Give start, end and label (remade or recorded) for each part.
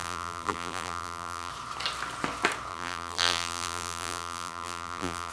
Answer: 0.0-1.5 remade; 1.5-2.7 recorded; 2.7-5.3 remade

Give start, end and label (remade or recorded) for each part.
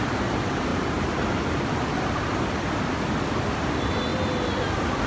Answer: 0.0-5.1 recorded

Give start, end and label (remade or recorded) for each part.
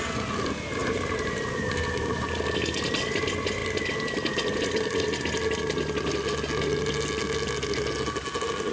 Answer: 0.0-0.8 recorded; 0.8-2.9 remade; 2.9-8.7 recorded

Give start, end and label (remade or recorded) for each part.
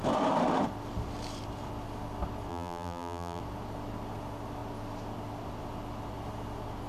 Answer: 0.0-2.5 recorded; 2.5-3.4 remade; 3.4-6.9 recorded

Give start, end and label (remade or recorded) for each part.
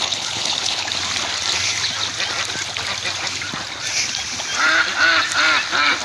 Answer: 0.0-0.9 remade; 0.9-6.0 recorded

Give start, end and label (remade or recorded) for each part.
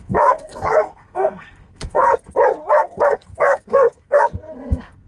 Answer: 0.0-2.1 remade; 2.1-2.8 recorded; 2.8-5.1 remade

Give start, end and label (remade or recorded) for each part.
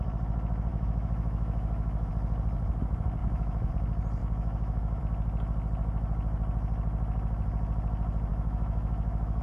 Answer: 0.0-0.7 recorded; 0.7-2.1 remade; 2.1-3.2 recorded; 3.2-3.7 remade; 3.7-4.2 recorded; 4.2-5.0 remade; 5.0-8.3 recorded; 8.3-9.4 remade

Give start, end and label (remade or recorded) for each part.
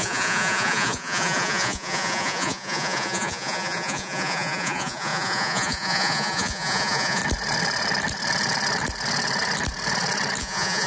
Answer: 0.0-7.2 remade; 7.2-10.4 recorded; 10.4-10.9 remade